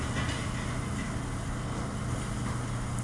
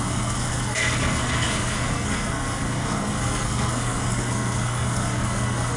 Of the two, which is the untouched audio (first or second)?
first